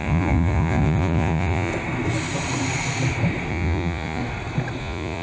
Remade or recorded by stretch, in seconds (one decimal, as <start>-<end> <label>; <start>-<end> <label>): 0.0-1.7 remade; 1.7-3.5 recorded; 3.5-4.2 remade; 4.2-4.8 recorded; 4.8-5.2 remade